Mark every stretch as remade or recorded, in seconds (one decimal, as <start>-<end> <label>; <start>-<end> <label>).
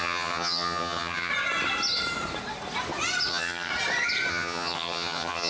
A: 0.0-1.3 remade; 1.3-3.3 recorded; 3.3-3.7 remade; 3.7-4.3 recorded; 4.3-5.5 remade